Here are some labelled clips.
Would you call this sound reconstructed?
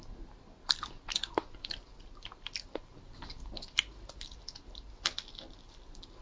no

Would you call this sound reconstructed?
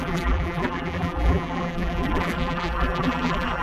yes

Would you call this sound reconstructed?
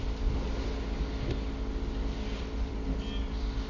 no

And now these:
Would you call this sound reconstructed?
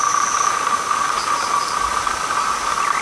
no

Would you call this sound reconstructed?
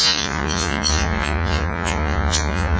yes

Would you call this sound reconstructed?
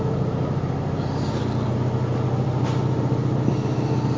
no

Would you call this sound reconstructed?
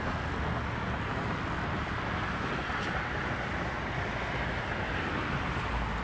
no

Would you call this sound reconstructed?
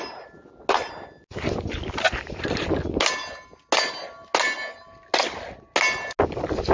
no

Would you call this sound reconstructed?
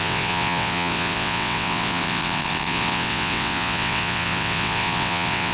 yes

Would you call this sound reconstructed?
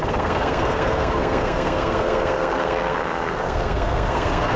yes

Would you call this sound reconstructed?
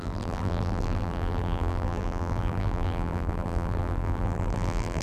yes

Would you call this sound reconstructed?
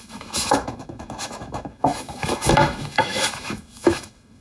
yes